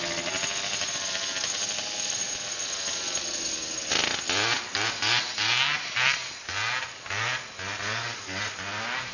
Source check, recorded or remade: recorded